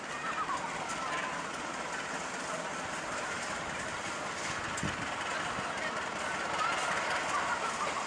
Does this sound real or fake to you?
real